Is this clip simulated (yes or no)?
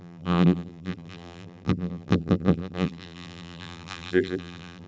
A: yes